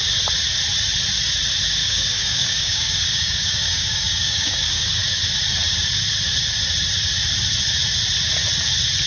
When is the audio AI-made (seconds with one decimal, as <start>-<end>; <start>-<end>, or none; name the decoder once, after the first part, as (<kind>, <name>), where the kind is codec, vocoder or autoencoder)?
1.8-4.9 (codec, DAC)